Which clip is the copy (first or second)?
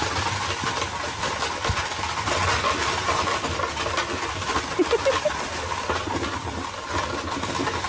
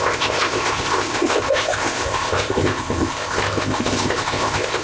second